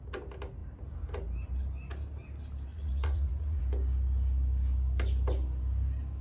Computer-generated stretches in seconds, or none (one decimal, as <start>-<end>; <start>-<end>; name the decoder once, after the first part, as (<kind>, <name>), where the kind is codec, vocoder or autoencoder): 2.7-3.6 (vocoder, Vocos)